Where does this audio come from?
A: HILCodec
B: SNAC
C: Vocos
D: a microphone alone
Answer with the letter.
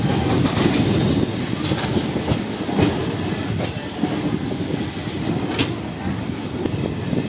D